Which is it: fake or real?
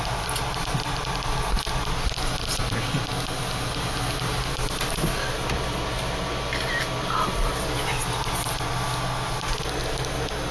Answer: real